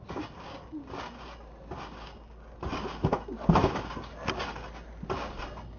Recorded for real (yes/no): yes